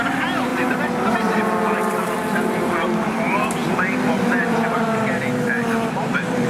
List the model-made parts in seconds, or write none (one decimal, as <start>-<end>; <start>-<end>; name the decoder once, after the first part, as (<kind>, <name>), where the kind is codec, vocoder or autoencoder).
0.0-0.5 (vocoder, BigVGAN v2); 1.1-6.5